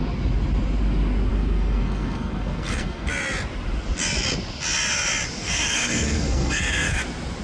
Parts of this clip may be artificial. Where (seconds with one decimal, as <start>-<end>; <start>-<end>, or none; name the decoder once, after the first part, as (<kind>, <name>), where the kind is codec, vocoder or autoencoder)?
1.3-3.1 (codec, SNAC); 5.4-7.0